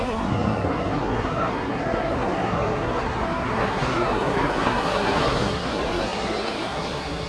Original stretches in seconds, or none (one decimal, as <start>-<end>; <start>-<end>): none